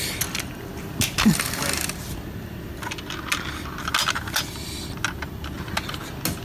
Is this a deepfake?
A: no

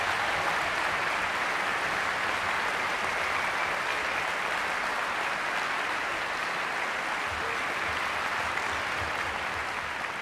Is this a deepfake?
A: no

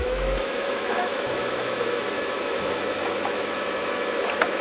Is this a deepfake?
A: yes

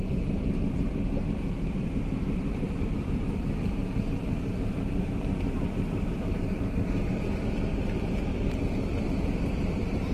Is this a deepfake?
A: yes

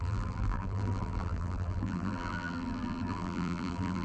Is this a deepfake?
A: yes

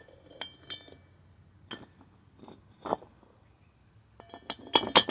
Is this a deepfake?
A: no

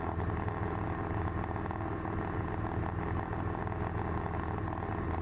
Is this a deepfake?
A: no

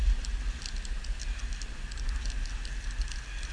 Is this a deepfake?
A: no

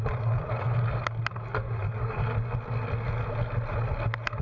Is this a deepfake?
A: no